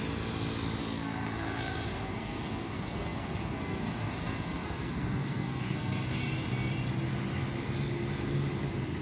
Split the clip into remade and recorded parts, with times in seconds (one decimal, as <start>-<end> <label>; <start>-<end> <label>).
0.0-0.8 recorded; 0.8-6.2 remade; 6.2-9.0 recorded